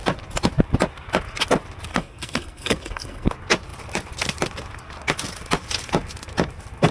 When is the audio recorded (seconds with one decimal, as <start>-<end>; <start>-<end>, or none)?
0.0-1.9; 3.3-6.9